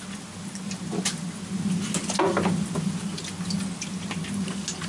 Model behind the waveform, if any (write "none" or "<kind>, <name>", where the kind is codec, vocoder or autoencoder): none